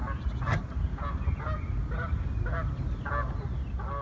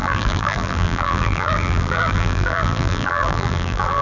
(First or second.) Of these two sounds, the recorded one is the first